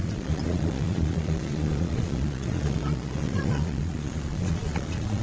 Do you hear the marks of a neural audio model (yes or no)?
yes